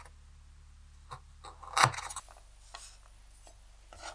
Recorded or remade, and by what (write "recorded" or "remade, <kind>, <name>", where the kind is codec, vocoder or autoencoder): recorded